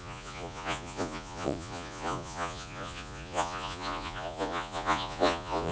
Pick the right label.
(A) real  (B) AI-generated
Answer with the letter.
B